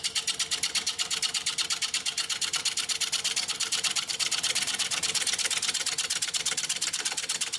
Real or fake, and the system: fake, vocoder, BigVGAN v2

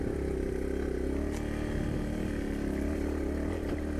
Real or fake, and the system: real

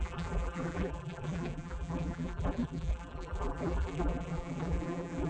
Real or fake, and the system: fake, vocoder, BigVGAN v2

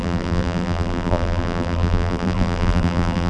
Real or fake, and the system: fake, vocoder, BigVGAN v2